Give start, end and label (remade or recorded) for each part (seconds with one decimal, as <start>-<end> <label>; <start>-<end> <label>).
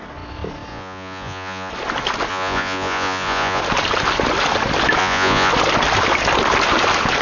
0.0-0.7 recorded; 0.7-1.7 remade; 1.7-2.3 recorded; 2.3-3.6 remade; 3.6-5.0 recorded; 5.0-5.5 remade; 5.5-7.2 recorded